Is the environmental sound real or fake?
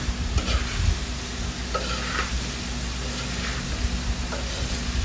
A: real